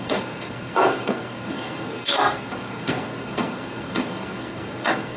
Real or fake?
fake